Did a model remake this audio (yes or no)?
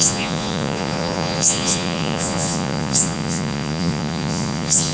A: yes